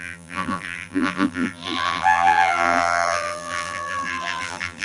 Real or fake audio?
fake